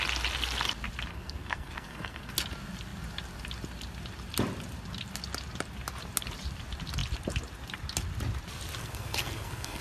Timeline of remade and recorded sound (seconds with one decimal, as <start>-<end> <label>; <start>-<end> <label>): 0.0-1.1 recorded; 1.1-2.3 remade; 2.3-8.8 recorded; 8.8-9.8 remade